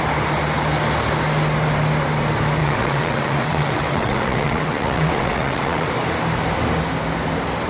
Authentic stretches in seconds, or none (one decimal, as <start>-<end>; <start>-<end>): 0.0-2.6; 5.9-7.7